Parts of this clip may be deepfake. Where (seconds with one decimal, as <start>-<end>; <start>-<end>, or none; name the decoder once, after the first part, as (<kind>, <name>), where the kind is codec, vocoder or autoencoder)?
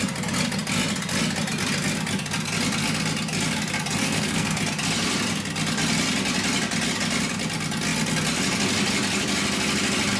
4.0-4.6 (codec, SNAC)